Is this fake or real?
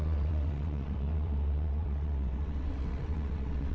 fake